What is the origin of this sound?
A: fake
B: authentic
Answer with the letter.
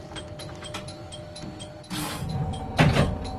B